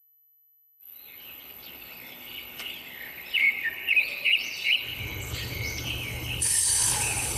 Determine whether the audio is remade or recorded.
remade